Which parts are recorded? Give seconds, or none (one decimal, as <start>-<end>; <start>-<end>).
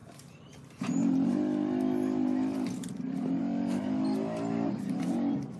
0.0-5.6